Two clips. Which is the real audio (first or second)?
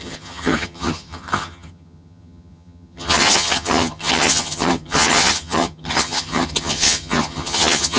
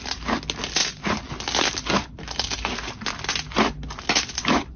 second